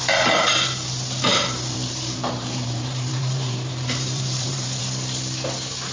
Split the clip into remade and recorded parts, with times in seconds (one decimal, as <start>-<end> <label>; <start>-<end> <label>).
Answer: 0.0-1.3 recorded; 1.3-4.8 remade; 4.8-5.9 recorded